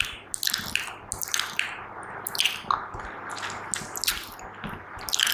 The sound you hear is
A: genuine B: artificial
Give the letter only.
A